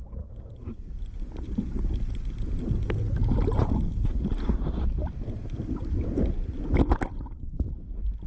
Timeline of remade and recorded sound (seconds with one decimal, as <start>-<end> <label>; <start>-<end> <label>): 0.0-8.3 recorded